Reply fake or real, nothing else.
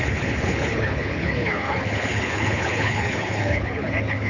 fake